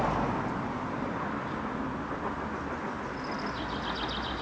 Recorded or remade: recorded